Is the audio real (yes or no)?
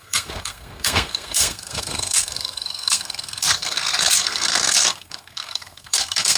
no